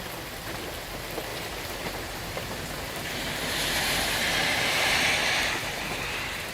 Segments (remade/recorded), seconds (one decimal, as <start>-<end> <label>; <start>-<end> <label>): 0.0-1.3 recorded; 1.3-5.0 remade; 5.0-5.6 recorded; 5.6-6.5 remade